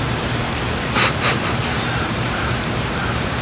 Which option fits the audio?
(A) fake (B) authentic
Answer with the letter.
A